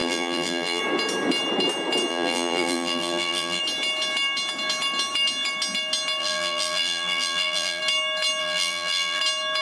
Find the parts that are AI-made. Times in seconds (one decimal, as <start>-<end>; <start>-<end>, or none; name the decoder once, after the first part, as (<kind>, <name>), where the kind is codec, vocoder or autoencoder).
0.0-0.8 (vocoder, BigVGAN v2); 2.1-3.6; 6.2-7.8; 8.4-9.2